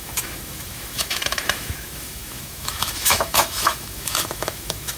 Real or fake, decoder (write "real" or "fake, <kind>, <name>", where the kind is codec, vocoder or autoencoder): fake, autoencoder, DAC-VAE